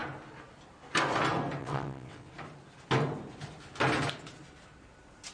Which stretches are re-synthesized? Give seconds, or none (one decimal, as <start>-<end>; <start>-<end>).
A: 1.6-2.3